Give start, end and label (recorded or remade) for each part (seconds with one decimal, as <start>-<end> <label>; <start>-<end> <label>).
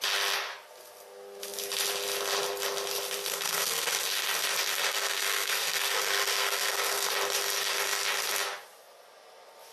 0.0-3.3 recorded; 3.3-4.0 remade; 4.0-4.8 recorded; 4.8-7.1 remade; 7.1-9.7 recorded